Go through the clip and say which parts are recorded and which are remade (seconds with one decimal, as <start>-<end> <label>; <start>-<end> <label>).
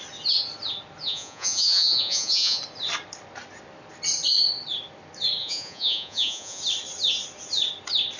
0.0-1.0 recorded; 1.0-2.6 remade; 2.6-5.4 recorded; 5.4-6.6 remade; 6.6-8.2 recorded